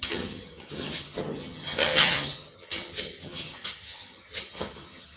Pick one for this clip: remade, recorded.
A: remade